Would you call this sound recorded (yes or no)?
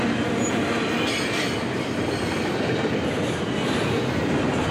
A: yes